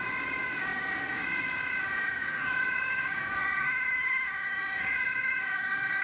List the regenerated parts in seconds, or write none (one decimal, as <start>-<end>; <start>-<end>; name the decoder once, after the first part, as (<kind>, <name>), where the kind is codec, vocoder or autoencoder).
0.0-6.0 (codec, DAC)